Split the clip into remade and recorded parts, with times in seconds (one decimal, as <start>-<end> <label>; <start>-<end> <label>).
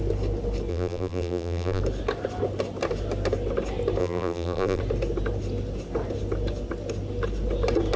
0.0-0.7 recorded; 0.7-1.8 remade; 1.8-4.0 recorded; 4.0-4.8 remade; 4.8-8.0 recorded